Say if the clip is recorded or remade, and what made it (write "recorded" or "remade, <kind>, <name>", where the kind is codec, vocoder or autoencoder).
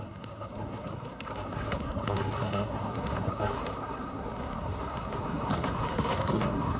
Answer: remade, codec, SNAC